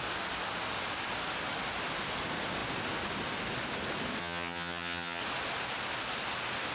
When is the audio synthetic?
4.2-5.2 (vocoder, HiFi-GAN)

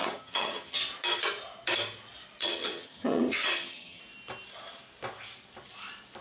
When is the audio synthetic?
0.0-0.8 (vocoder, HiFi-GAN); 2.4-4.0